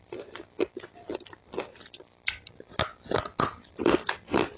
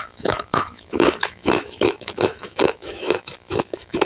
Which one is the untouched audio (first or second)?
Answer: first